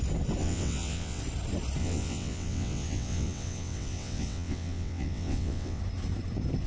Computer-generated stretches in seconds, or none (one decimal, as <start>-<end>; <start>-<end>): 0.4-1.2; 1.8-5.8